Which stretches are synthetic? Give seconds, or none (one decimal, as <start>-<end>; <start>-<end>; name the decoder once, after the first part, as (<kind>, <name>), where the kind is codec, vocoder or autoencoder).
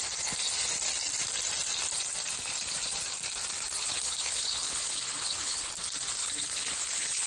3.8-5.7 (codec, HILCodec); 6.2-7.3